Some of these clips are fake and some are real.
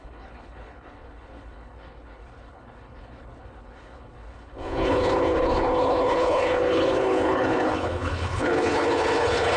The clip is fake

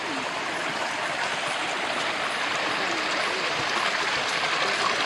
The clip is real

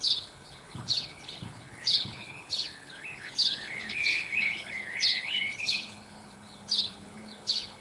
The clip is fake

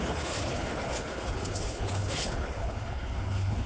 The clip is fake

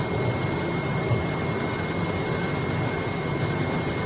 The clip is real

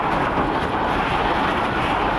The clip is real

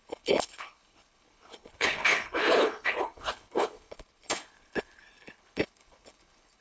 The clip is fake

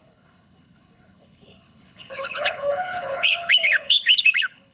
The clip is fake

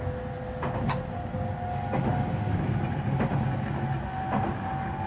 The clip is real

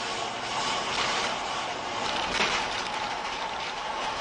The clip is real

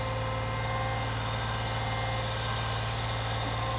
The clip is real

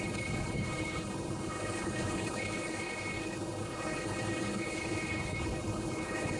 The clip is fake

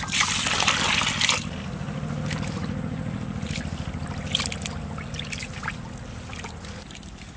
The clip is real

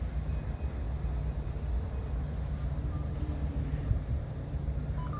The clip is real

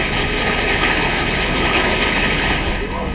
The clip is fake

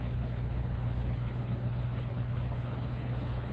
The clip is fake